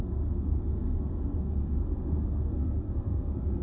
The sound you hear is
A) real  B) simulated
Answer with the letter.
B